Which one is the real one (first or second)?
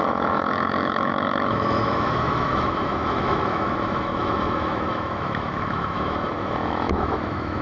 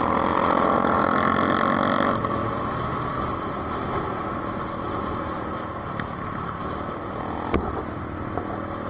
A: second